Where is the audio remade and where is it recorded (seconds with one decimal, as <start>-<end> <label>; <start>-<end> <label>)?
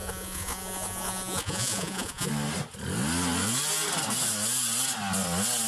0.0-2.3 remade; 2.3-5.7 recorded